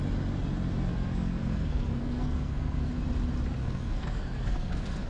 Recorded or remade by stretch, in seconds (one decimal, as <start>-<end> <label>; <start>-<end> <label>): 0.0-0.9 recorded; 0.9-2.9 remade; 2.9-3.6 recorded; 3.6-5.1 remade